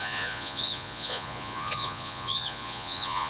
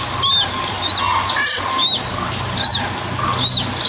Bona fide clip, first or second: second